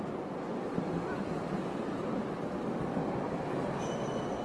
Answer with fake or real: real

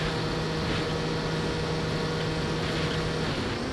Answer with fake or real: real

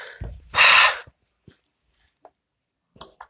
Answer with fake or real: fake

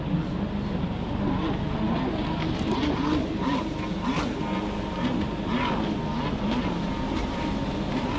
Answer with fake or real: real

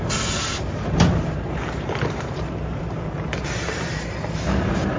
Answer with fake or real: fake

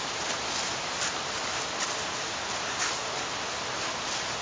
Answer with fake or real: real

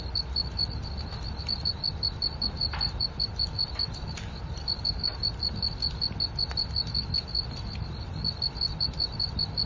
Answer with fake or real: real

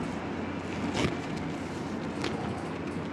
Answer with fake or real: real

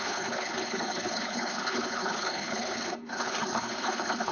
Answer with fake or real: fake